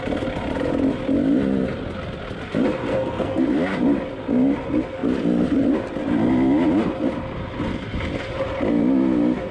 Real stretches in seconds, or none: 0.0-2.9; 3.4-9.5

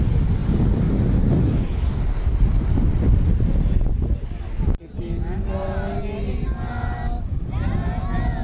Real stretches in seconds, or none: 0.0-8.4

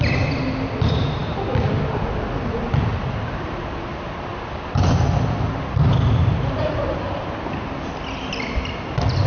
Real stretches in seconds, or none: 0.0-9.3

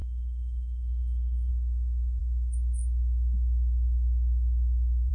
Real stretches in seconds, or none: 1.5-5.1

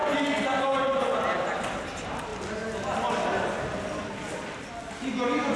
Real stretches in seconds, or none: 0.0-5.6